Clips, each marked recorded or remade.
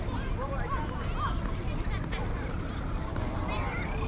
recorded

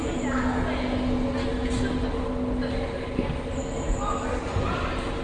recorded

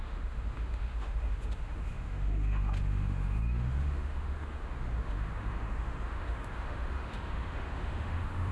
remade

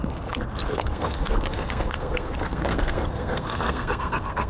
remade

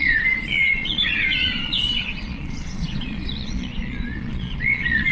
remade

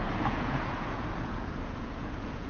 remade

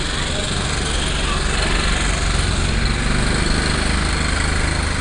recorded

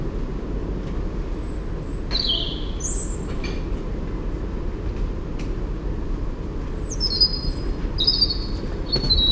recorded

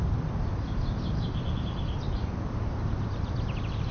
remade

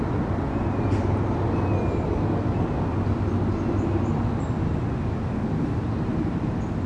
recorded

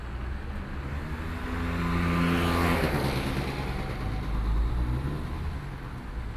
recorded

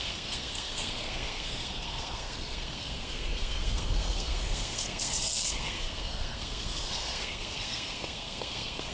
remade